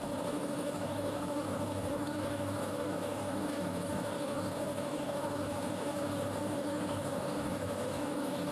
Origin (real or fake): fake